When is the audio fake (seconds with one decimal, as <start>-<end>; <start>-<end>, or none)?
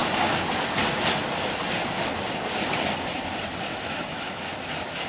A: 3.7-4.4